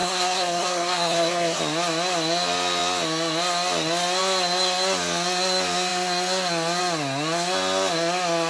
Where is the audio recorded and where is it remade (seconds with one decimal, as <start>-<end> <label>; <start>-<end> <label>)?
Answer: 0.0-1.6 remade; 1.6-8.5 recorded